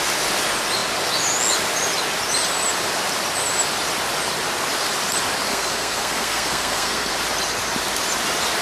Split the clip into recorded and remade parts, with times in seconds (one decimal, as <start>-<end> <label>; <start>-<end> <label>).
0.0-5.5 recorded; 5.5-7.1 remade; 7.1-8.6 recorded